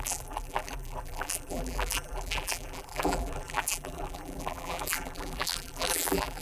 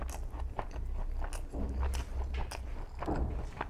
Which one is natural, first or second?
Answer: second